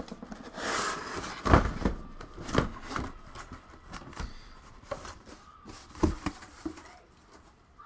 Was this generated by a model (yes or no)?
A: yes